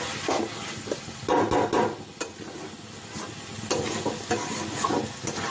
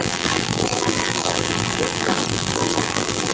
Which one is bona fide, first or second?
first